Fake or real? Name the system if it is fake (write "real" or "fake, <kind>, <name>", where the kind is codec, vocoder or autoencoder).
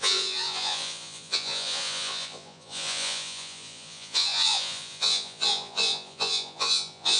fake, vocoder, Vocos